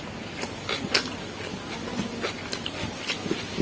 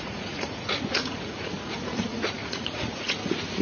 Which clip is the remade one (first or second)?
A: second